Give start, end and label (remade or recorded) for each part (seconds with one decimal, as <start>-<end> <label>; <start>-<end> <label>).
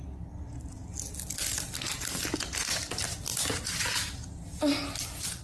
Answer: 0.0-5.4 recorded